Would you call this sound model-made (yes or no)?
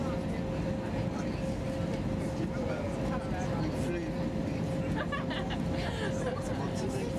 no